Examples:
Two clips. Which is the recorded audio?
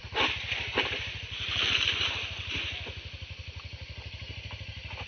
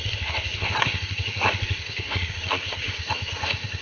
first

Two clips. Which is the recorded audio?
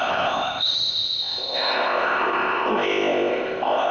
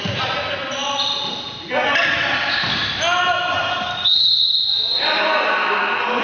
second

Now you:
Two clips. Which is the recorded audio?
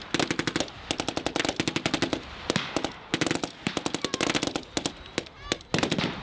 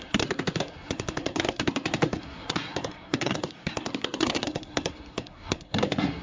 first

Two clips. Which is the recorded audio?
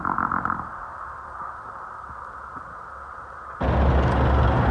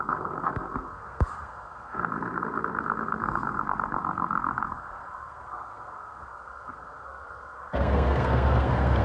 first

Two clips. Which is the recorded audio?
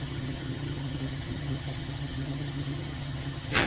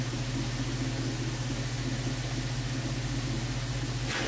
second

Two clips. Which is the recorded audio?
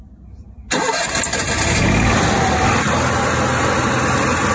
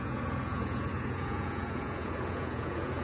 first